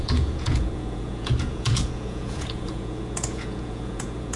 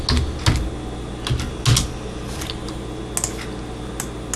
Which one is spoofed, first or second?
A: first